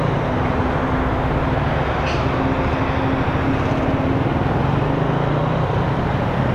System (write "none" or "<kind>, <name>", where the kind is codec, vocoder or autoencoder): none